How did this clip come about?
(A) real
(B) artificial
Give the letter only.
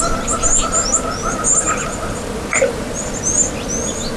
A